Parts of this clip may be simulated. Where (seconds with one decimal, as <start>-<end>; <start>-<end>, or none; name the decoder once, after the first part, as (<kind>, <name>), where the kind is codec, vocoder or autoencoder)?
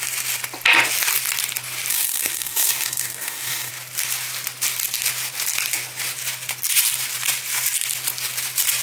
1.9-3.7 (codec, DAC)